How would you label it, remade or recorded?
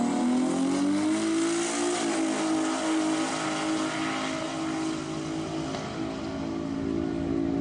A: recorded